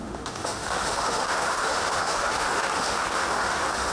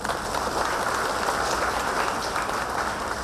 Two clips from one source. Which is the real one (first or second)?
second